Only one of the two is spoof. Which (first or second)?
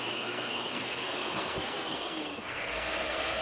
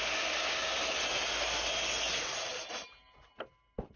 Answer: first